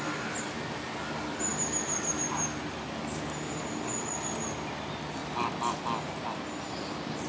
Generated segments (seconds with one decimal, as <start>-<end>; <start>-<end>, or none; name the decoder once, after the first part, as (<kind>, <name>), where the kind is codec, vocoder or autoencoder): none